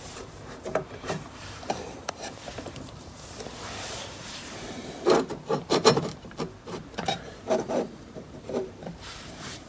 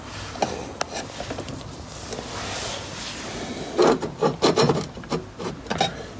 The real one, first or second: second